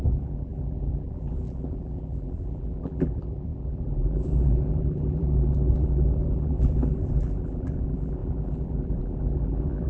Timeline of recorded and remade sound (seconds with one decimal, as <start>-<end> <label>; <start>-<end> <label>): 0.0-9.9 remade